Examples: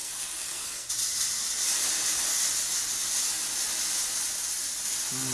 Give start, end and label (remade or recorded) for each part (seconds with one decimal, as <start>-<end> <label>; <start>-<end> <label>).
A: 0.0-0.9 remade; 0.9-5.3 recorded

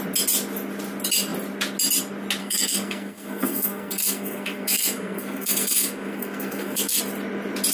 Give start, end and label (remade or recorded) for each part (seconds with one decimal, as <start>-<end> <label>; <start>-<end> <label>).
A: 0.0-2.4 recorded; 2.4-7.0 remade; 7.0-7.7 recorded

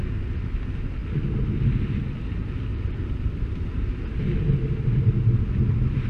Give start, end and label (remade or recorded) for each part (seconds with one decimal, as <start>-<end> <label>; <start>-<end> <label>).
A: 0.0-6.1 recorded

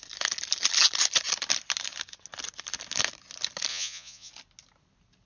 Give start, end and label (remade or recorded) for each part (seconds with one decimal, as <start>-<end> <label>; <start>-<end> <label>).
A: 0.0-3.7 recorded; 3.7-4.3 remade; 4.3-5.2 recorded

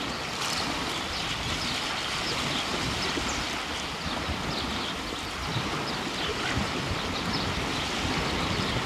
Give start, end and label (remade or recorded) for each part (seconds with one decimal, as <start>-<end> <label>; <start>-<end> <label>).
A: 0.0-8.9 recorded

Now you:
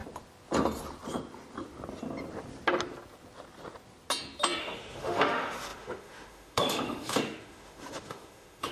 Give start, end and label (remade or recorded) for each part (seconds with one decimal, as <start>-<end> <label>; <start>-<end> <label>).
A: 0.0-4.6 recorded; 4.6-8.7 remade

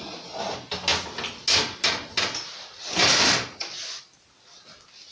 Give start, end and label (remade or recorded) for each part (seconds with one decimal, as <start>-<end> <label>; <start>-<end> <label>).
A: 0.0-5.1 recorded